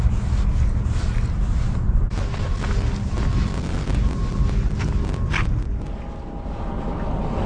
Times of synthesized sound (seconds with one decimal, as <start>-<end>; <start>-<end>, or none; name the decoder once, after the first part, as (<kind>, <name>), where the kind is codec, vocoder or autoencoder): none

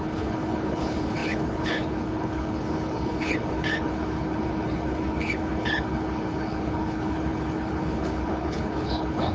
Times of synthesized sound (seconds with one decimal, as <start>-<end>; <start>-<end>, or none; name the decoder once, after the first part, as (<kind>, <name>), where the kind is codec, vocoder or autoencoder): 0.0-9.3 (codec, HILCodec)

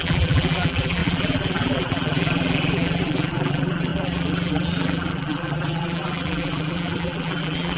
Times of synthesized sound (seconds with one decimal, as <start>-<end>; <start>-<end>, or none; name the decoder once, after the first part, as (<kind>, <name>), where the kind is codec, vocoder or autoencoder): 0.0-7.8 (vocoder, BigVGAN v2)

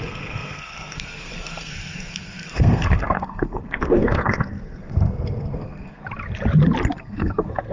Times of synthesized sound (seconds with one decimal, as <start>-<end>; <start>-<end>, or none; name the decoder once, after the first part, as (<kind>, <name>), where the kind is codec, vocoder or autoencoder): 0.0-6.0 (codec, SNAC); 7.0-7.7

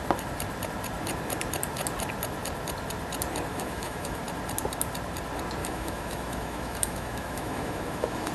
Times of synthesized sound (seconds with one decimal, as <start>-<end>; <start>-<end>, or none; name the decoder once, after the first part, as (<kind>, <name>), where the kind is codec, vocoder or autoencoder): 3.5-4.2 (autoencoder, DAC-VAE); 5.6-8.3

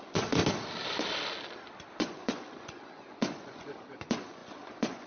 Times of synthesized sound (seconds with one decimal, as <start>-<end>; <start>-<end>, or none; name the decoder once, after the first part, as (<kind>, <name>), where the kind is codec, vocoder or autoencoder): 0.0-0.4 (vocoder, Vocos); 1.9-5.1